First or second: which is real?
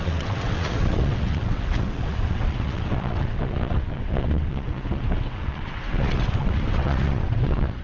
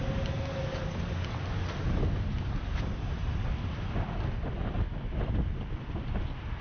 second